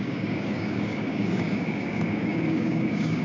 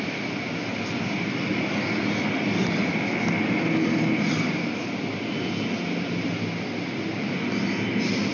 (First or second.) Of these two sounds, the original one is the second